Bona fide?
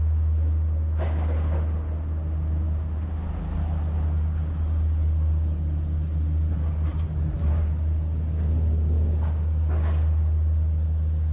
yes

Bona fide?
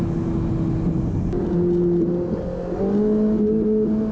yes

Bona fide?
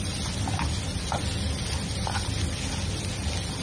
yes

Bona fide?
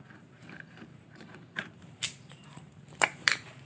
no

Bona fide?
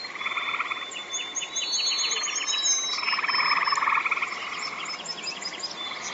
yes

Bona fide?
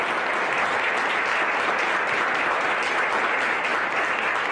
yes